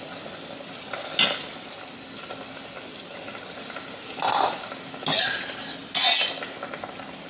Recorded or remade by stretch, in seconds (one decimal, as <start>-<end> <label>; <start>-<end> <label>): 0.0-7.3 recorded